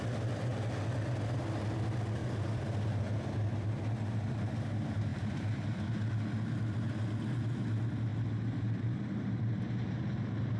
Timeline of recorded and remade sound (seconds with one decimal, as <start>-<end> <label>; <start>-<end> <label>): 0.0-2.2 recorded; 2.2-3.0 remade; 3.0-5.1 recorded; 5.1-6.0 remade; 6.0-8.1 recorded; 8.1-9.6 remade; 9.6-10.6 recorded